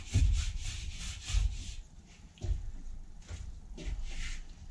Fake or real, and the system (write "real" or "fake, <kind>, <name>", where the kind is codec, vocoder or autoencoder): real